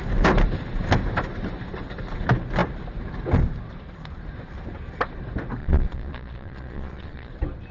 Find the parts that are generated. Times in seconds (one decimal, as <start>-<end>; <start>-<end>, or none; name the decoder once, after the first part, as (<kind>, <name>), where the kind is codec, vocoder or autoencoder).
5.6-7.3 (vocoder, Vocos)

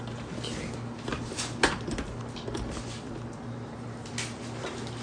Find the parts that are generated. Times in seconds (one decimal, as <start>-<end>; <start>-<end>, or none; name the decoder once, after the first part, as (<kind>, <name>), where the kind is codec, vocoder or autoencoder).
none